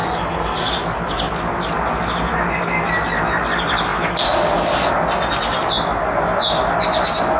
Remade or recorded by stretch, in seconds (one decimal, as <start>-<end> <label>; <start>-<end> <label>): 0.0-0.7 remade; 0.7-7.4 recorded